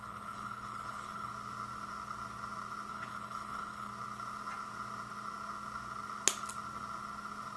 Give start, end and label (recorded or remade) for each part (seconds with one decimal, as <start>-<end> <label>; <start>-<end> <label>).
0.0-1.3 remade; 1.3-2.9 recorded; 2.9-3.9 remade; 3.9-7.6 recorded